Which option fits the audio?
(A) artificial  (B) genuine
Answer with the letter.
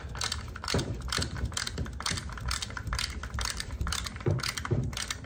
A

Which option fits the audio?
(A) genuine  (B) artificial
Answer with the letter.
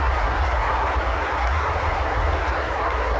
B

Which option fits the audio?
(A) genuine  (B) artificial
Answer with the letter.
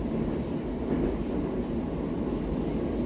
A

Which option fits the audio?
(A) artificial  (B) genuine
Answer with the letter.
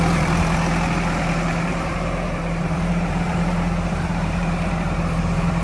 A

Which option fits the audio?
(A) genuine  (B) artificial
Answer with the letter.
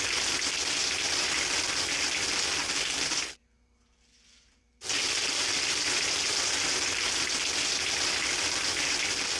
B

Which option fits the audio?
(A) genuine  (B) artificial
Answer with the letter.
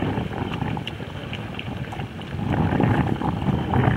A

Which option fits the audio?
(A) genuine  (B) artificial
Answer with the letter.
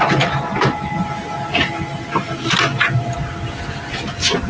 A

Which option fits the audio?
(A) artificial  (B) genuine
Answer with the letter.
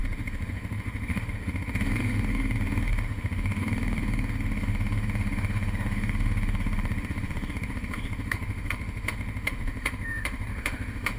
A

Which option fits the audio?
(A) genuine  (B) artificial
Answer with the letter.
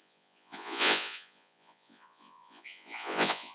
B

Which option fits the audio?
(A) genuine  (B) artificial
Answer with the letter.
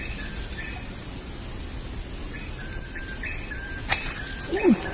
A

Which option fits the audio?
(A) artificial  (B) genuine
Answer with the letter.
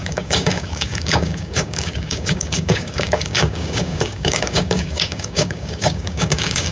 A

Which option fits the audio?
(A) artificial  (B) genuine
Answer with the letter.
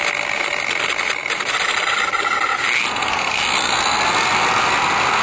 B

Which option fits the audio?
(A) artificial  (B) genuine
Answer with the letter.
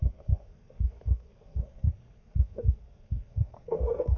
A